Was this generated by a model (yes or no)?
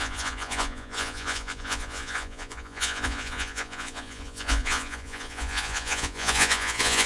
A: yes